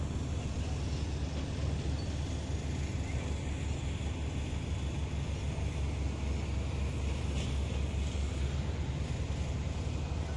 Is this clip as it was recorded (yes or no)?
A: yes